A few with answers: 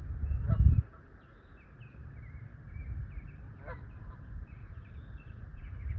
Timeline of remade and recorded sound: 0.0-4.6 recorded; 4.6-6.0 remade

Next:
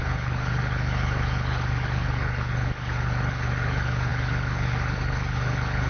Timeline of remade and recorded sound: 0.0-5.9 remade

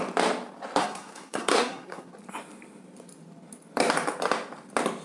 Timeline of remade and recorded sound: 0.0-0.8 recorded; 0.8-2.1 remade; 2.1-5.0 recorded